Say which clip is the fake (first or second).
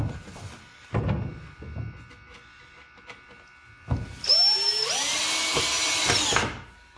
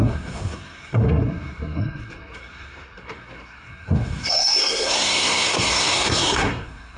second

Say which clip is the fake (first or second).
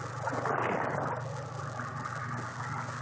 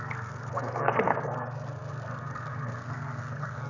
second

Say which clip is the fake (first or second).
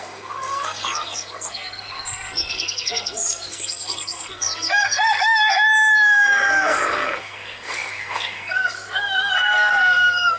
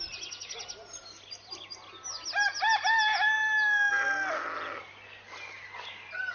first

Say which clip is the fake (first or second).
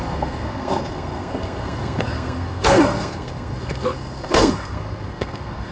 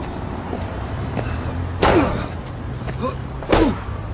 first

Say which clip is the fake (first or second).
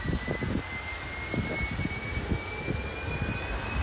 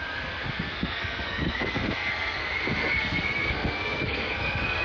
second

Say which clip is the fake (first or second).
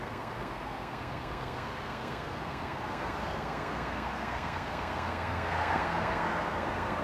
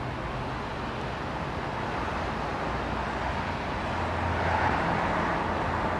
first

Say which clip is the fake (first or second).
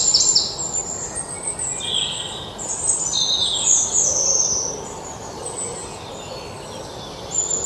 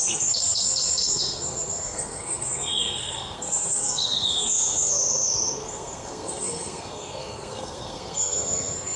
second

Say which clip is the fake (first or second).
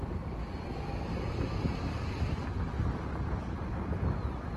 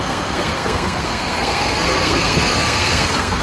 second